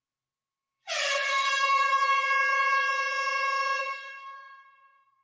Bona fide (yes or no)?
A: no